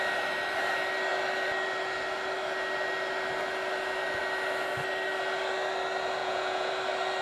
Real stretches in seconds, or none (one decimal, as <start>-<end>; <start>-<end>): 0.0-6.2; 6.7-7.2